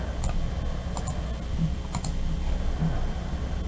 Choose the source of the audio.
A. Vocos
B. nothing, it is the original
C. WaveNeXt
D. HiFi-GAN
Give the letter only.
B